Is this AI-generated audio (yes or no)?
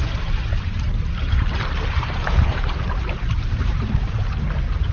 yes